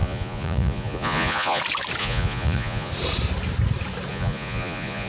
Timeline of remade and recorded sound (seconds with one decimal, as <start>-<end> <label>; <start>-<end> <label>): 0.0-1.6 remade; 1.6-2.0 recorded; 2.0-2.9 remade; 2.9-4.1 recorded; 4.1-5.1 remade